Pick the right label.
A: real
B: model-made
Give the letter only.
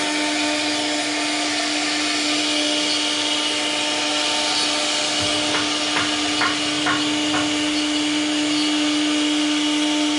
A